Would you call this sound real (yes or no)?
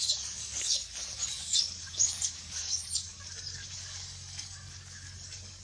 no